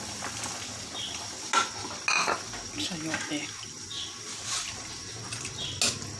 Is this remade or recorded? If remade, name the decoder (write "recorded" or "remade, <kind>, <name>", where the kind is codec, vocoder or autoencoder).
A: recorded